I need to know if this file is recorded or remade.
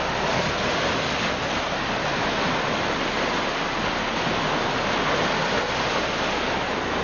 recorded